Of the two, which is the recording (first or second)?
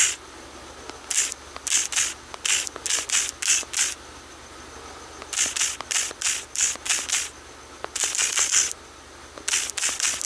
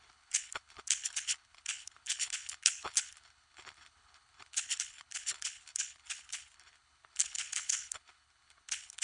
first